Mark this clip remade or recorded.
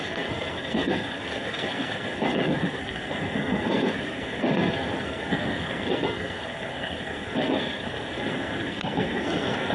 remade